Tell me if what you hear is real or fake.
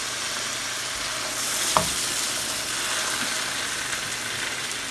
real